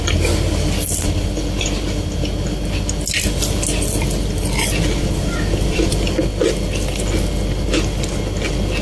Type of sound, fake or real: real